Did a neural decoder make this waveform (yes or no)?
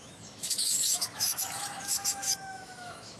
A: yes